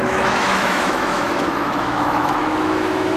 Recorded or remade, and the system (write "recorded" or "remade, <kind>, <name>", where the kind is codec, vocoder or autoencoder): remade, autoencoder, DAC-VAE